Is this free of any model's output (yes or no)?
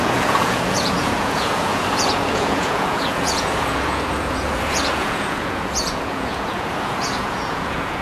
no